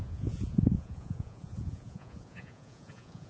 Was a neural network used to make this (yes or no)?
yes